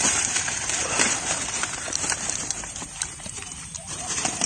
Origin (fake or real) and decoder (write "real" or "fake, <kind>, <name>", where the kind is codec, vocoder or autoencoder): fake, vocoder, BigVGAN v2